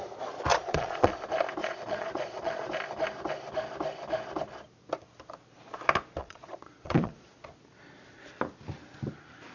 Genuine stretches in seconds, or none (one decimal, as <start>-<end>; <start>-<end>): 0.0-0.5; 1.1-1.6; 2.7-6.2; 7.4-9.5